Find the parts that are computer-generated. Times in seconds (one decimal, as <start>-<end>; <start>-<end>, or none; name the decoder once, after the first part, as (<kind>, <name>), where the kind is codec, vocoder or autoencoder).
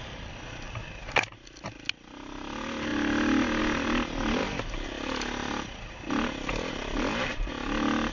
none